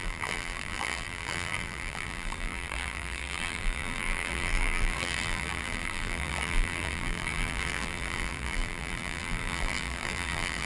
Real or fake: fake